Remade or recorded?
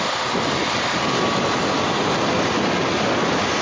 recorded